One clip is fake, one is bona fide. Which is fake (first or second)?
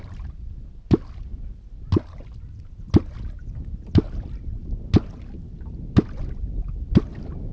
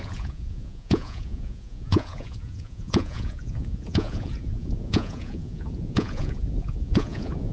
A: second